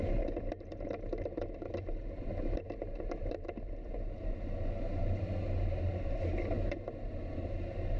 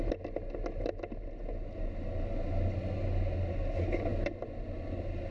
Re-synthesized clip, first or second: first